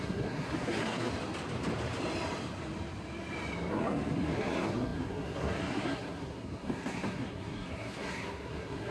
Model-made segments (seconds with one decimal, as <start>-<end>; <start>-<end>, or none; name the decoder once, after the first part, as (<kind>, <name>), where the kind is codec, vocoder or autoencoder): 0.0-1.1 (codec, SNAC); 3.7-8.9